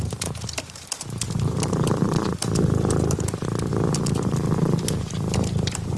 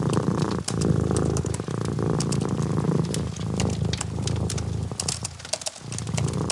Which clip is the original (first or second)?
second